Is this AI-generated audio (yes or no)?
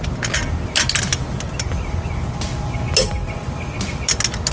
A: no